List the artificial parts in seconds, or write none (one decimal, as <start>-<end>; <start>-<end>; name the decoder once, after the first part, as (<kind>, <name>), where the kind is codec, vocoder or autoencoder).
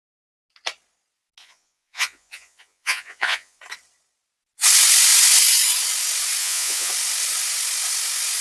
1.4-3.6 (vocoder, Vocos); 6.4-6.9